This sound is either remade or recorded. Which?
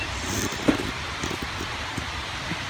remade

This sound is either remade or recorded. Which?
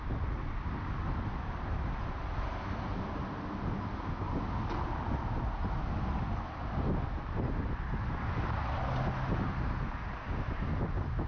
recorded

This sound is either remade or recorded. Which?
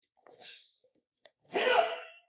remade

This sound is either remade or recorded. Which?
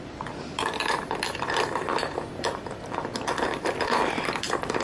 remade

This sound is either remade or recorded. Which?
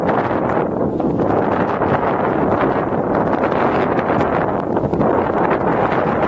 recorded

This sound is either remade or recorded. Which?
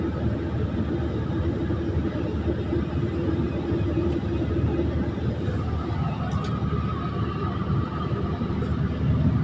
recorded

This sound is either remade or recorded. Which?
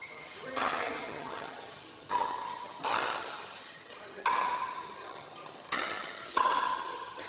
remade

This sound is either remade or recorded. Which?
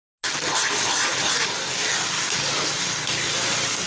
recorded